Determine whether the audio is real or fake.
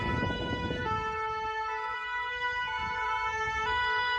fake